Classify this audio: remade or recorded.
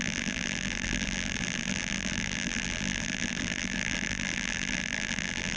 remade